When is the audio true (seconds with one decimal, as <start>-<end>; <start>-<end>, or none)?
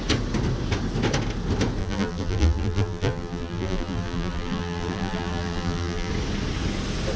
0.0-1.8; 6.1-7.2